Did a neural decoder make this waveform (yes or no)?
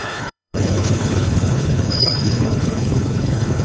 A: yes